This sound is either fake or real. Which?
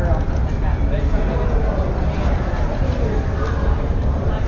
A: real